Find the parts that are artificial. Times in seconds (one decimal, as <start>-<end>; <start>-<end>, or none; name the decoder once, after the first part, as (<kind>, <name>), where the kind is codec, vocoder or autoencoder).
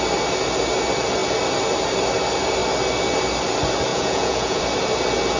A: 3.9-4.6 (vocoder, Vocos)